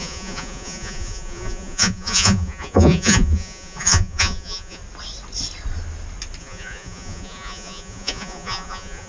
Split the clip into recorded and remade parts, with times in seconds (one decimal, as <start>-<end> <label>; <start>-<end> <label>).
0.0-4.8 remade; 4.8-6.4 recorded; 6.4-9.1 remade